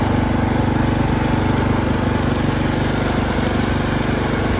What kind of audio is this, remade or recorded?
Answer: recorded